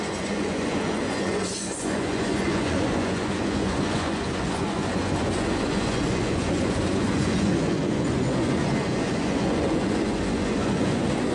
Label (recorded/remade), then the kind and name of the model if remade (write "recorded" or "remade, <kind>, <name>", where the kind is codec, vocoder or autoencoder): remade, vocoder, Vocos